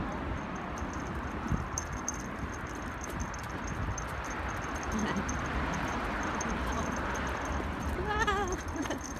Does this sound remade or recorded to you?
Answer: remade